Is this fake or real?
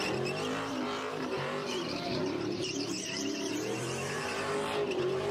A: fake